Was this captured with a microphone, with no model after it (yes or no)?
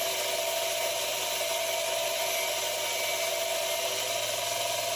yes